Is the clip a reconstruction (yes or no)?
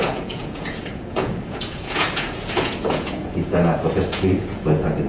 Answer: yes